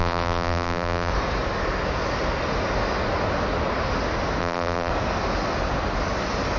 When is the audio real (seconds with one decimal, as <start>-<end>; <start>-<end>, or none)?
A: 1.1-4.4; 4.9-6.6